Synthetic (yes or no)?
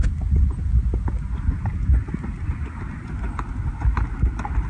no